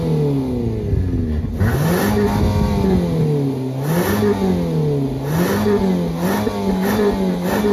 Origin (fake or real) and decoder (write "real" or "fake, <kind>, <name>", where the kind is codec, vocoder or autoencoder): real